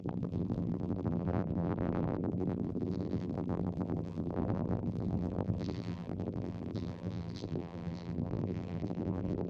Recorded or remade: remade